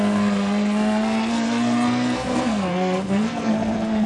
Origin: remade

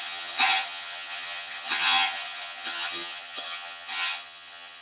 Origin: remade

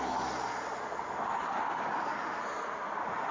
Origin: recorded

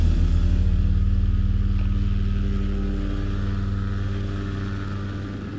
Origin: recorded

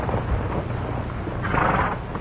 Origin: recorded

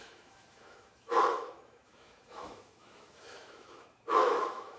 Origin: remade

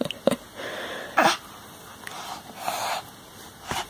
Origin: recorded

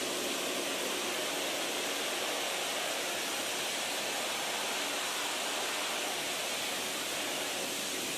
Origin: recorded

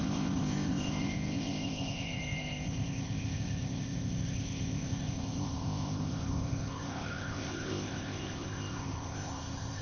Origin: remade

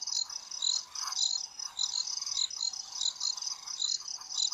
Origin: recorded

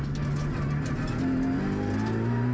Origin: recorded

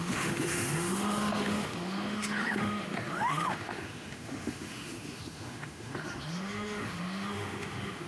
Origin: remade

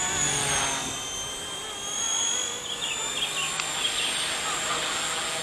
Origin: recorded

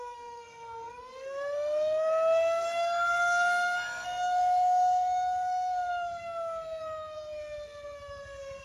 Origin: remade